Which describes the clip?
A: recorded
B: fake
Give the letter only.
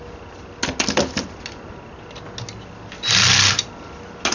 A